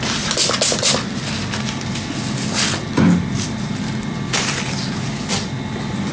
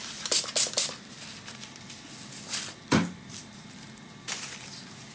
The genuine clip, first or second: first